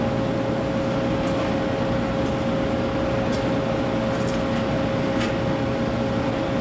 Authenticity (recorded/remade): recorded